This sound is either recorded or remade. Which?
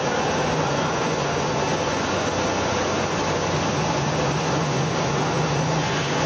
remade